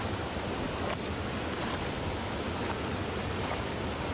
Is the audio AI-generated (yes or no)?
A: no